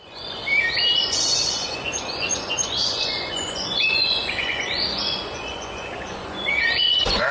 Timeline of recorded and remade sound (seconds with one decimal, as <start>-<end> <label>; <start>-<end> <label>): 0.0-0.4 remade; 0.4-1.0 recorded; 1.0-7.3 remade